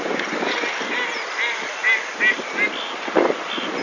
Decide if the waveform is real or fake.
real